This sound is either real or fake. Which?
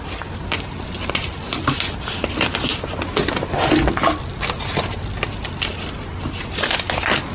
real